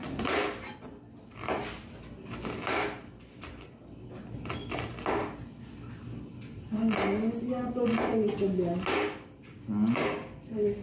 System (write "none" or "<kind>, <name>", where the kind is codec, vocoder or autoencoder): none